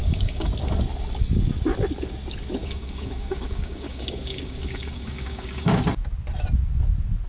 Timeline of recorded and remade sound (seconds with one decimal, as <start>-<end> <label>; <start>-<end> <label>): 0.0-0.5 remade; 0.5-2.6 recorded; 2.6-5.7 remade; 5.7-7.3 recorded